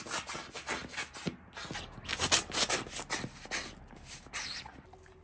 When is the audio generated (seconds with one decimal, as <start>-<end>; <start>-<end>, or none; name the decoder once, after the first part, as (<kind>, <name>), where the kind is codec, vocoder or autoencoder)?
none